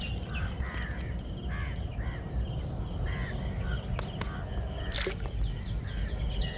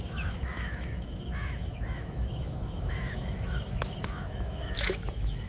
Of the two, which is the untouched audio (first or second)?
first